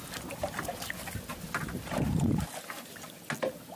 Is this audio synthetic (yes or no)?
no